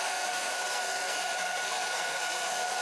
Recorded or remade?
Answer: remade